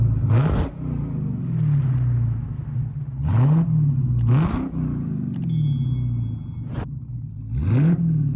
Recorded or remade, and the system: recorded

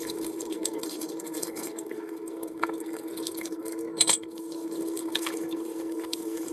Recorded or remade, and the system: remade, codec, SNAC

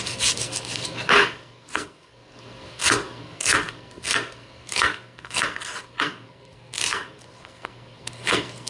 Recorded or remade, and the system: remade, codec, SNAC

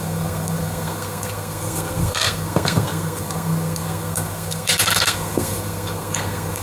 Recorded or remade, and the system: remade, codec, SNAC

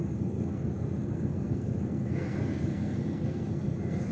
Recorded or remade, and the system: remade, codec, SNAC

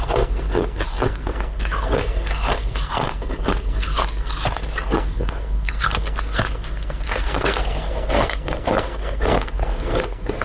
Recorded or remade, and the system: remade, codec, SNAC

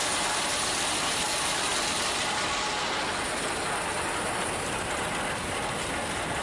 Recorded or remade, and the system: recorded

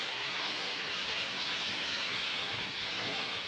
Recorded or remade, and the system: remade, codec, SNAC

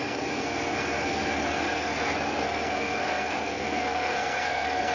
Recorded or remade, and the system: remade, codec, SNAC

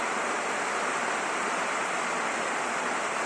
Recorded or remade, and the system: recorded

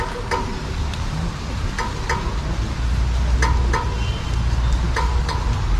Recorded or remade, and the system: recorded